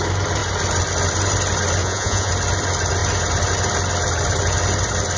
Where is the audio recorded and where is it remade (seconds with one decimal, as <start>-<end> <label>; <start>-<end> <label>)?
0.0-1.8 recorded; 1.8-2.3 remade; 2.3-5.2 recorded

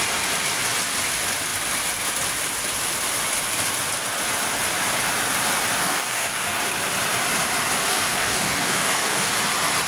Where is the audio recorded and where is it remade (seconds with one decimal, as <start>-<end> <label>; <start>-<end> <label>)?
0.0-5.8 recorded; 5.8-6.6 remade; 6.6-7.9 recorded; 7.9-9.3 remade; 9.3-9.9 recorded

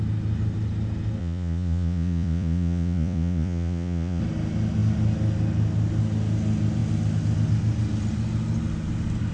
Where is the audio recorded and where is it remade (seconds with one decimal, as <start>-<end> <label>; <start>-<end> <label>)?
0.0-1.2 recorded; 1.2-4.2 remade; 4.2-9.3 recorded